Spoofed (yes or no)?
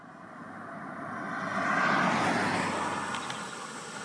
no